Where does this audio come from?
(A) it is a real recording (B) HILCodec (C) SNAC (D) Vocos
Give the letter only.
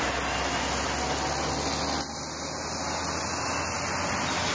A